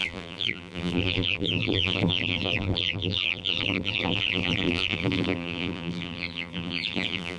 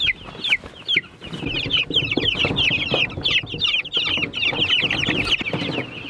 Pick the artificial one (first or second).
first